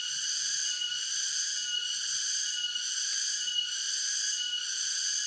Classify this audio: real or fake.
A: fake